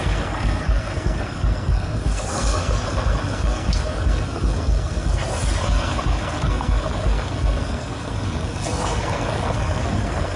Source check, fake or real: fake